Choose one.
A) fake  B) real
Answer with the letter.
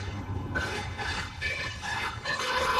A